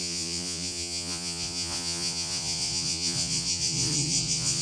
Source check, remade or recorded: remade